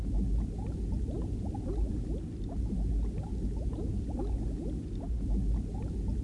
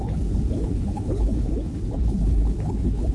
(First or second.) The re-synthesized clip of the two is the second